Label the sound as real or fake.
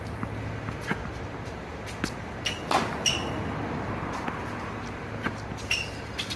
real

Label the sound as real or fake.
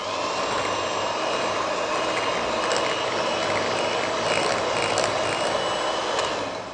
real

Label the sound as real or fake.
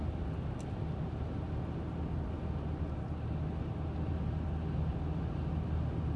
real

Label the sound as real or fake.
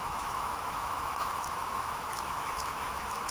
fake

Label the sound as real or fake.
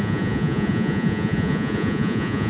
fake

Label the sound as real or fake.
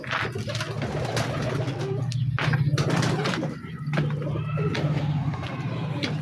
real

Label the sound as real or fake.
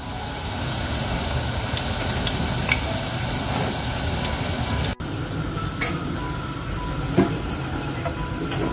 real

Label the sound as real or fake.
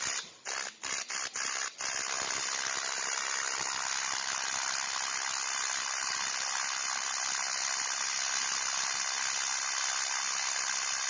real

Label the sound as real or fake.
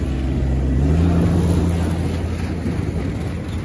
real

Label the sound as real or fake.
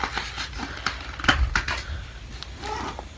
real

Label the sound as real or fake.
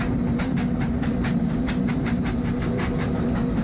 fake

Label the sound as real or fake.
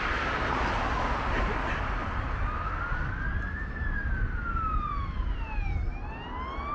real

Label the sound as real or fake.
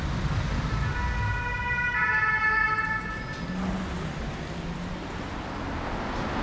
real